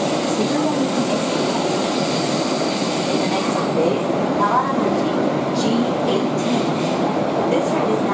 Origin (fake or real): real